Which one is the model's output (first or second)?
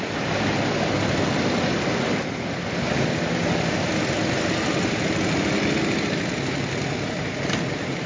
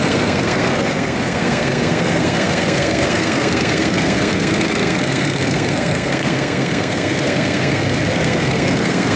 second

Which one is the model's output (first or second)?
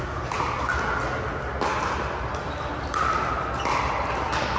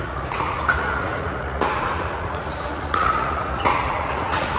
second